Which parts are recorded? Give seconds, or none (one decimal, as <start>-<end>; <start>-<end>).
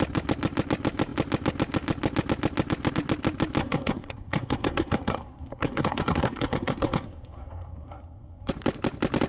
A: 0.0-3.6; 8.5-9.3